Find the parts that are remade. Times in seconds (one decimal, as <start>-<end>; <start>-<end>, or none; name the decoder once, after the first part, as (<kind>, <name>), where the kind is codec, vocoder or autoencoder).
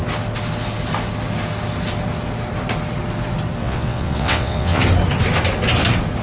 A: 3.6-4.8 (vocoder, WaveNeXt)